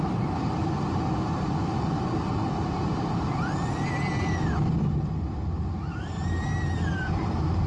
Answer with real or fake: real